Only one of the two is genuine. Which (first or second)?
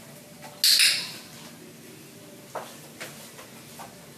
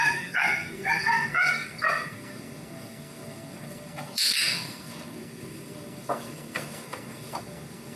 first